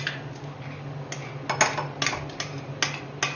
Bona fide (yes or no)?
yes